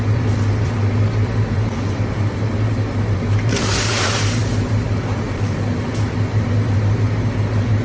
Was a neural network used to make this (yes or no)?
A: yes